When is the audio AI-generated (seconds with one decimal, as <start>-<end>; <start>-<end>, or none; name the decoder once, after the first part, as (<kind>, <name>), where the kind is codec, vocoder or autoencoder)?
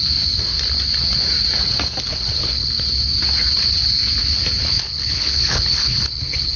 2.1-2.7 (codec, HILCodec); 4.6-6.6